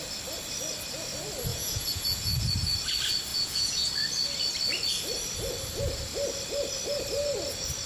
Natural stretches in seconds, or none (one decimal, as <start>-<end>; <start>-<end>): 0.0-1.5; 2.5-3.3; 3.9-7.9